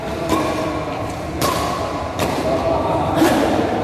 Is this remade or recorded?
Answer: remade